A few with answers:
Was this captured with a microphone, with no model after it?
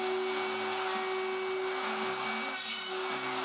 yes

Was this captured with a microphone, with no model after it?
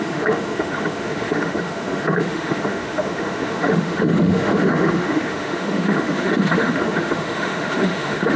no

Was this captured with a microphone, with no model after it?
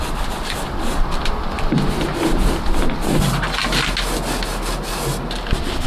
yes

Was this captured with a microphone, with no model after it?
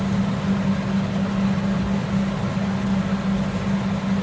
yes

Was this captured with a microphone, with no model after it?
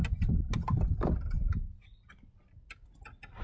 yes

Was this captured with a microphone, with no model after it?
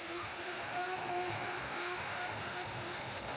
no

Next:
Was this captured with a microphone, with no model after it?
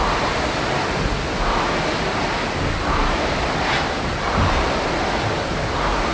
yes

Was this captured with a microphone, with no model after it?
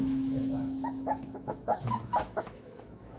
no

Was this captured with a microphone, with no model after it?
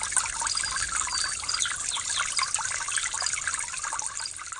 yes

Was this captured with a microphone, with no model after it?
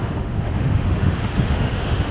no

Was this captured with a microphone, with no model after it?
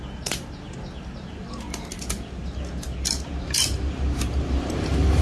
yes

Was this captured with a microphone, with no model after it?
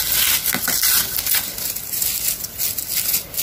yes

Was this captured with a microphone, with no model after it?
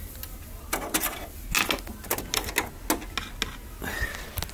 yes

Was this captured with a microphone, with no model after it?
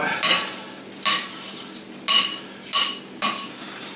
yes